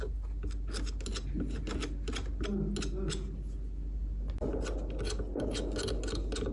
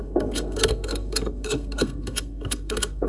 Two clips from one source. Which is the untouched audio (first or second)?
first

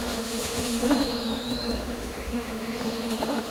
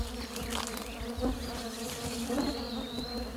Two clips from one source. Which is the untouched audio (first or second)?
second